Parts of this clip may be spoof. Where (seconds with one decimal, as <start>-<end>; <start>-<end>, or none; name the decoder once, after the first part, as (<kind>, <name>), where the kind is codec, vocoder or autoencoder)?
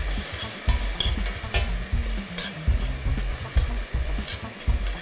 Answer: 3.3-4.3 (vocoder, Vocos)